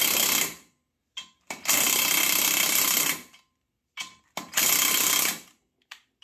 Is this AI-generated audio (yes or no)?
no